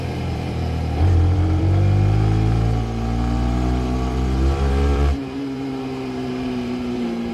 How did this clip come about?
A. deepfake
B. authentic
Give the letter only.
A